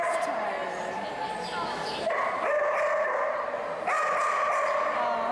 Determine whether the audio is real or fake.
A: real